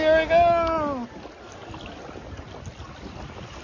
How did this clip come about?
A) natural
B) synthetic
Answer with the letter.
A